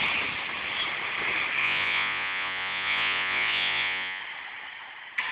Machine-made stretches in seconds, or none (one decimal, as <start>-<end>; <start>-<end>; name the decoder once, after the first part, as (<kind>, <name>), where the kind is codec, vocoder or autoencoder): 1.6-4.2 (vocoder, Vocos)